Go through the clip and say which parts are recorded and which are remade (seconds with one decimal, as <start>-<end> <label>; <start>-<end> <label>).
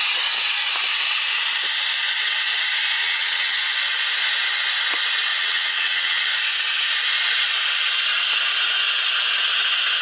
0.0-3.0 recorded; 3.0-3.6 remade; 3.6-5.3 recorded; 5.3-6.2 remade; 6.2-10.0 recorded